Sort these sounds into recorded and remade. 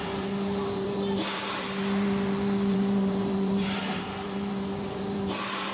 remade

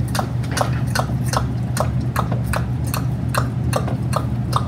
recorded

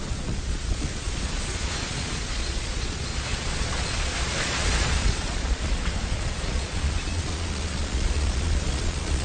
remade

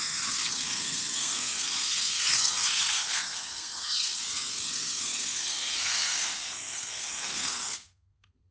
remade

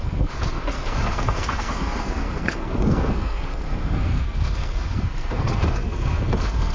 remade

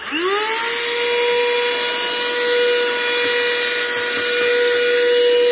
recorded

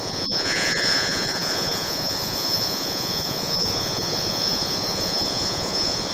remade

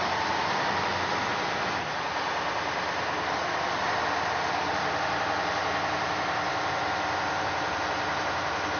remade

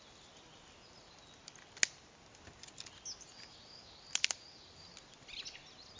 recorded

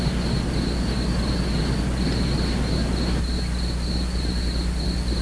recorded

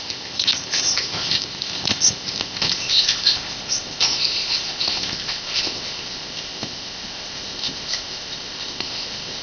remade